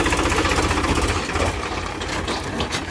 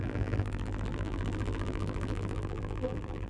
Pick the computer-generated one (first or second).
second